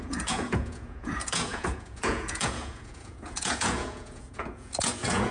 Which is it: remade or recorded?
remade